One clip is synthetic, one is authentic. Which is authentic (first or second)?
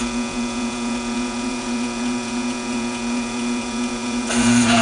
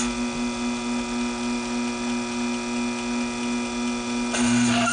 second